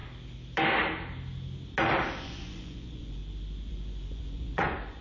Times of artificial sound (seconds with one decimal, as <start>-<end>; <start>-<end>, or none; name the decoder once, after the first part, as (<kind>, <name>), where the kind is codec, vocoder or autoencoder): 2.2-3.2 (vocoder, Vocos); 3.7-5.0